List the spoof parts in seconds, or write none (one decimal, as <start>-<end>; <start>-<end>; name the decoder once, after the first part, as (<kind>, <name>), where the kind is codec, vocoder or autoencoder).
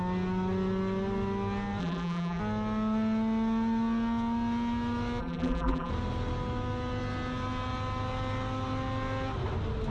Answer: 1.8-2.4 (vocoder, BigVGAN v2); 5.2-5.9